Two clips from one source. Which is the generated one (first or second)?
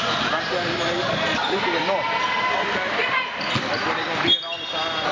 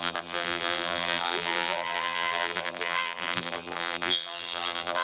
second